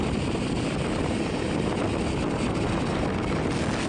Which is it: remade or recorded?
recorded